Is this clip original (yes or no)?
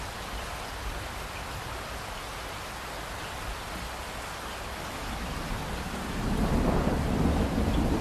yes